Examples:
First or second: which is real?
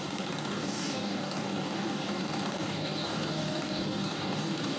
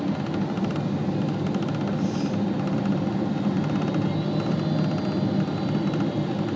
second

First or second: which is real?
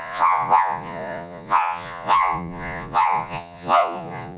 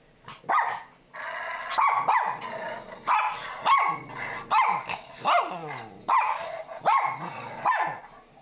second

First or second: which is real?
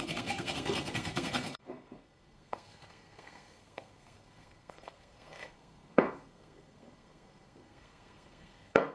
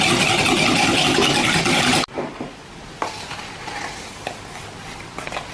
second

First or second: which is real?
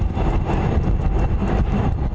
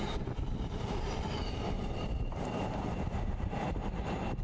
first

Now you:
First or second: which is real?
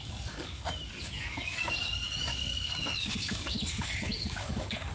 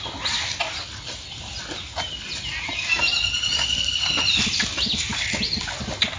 second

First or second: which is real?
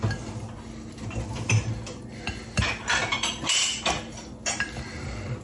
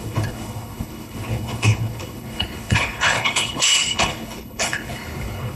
first